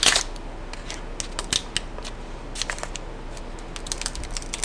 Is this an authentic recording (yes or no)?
yes